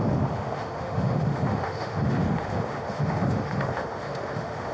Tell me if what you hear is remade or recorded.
remade